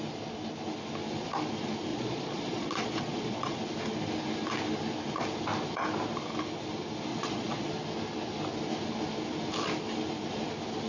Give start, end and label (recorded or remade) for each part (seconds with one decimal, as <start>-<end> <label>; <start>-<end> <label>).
0.0-1.9 recorded; 1.9-3.6 remade; 3.6-7.1 recorded; 7.1-7.7 remade; 7.7-10.9 recorded